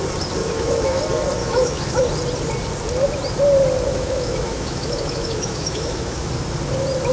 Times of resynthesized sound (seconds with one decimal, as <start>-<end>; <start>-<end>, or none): 0.4-1.0; 1.4-2.0; 3.9-6.3